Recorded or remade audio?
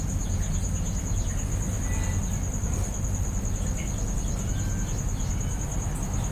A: recorded